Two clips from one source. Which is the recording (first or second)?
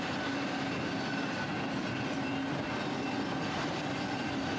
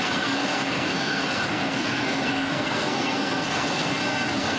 first